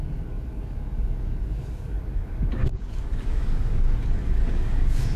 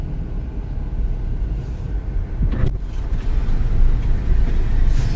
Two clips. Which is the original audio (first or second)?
second